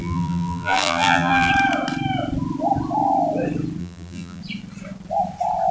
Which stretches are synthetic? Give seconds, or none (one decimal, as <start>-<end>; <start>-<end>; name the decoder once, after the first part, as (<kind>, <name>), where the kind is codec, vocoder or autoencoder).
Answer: 0.0-1.5 (vocoder, BigVGAN v2); 3.8-4.4